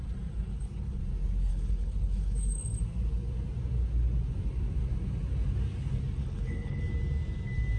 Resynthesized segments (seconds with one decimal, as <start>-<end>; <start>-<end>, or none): 0.5-1.0; 1.5-2.8; 6.2-6.8